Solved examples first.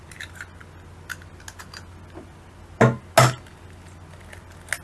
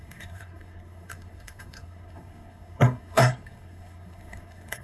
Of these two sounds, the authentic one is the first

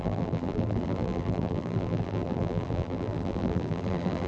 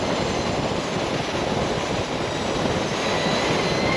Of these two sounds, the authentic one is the second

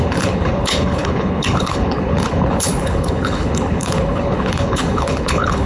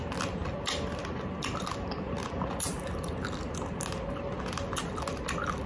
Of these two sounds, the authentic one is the second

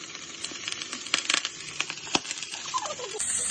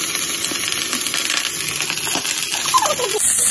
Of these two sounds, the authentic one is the second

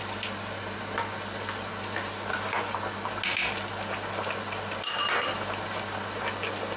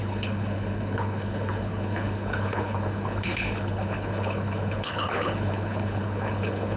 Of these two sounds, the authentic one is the first